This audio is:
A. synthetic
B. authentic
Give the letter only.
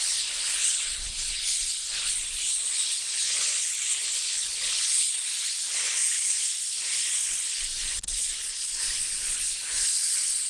A